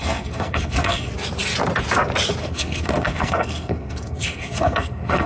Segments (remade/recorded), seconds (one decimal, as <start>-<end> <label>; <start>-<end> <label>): 0.0-1.1 remade; 1.1-2.4 recorded; 2.4-5.3 remade